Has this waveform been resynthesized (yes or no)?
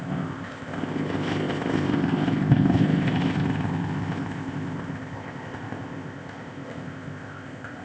yes